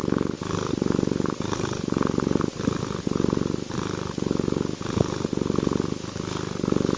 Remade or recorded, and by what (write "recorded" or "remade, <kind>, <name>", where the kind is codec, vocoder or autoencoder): recorded